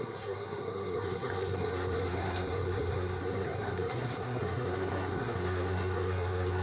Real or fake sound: fake